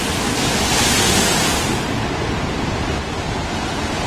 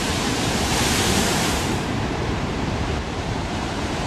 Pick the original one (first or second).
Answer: first